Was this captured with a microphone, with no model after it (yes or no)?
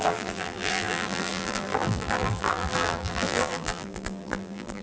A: no